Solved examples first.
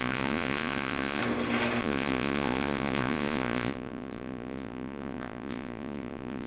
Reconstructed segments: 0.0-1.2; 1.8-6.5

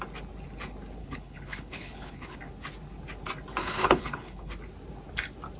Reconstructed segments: 1.0-2.4; 3.6-4.5

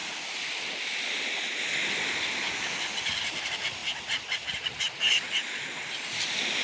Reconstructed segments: none

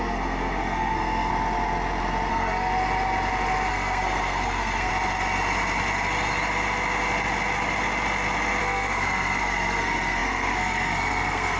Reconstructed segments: 0.0-1.3; 2.3-2.7; 3.7-4.9; 8.6-11.6

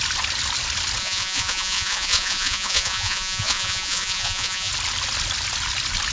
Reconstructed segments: 1.0-4.7

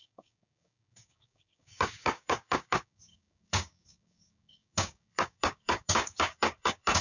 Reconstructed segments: 0.0-7.0